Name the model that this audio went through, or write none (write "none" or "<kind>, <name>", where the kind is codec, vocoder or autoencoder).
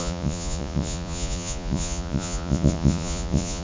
vocoder, Vocos